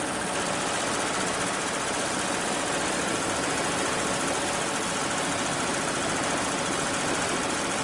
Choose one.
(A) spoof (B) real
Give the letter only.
B